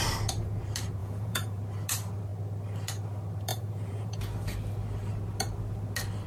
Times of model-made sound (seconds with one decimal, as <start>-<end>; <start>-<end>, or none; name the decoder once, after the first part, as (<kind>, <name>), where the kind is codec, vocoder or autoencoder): 1.0-1.6 (vocoder, Vocos); 3.5-4.2